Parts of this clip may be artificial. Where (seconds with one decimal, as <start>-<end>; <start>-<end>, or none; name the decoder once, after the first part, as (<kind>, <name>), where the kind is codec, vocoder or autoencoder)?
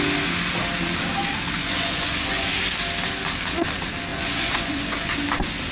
1.6-2.5 (vocoder, Vocos); 4.1-5.1